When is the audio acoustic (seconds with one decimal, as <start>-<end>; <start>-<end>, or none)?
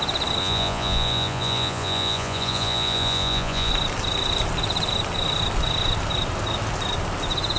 0.0-0.4; 3.7-7.6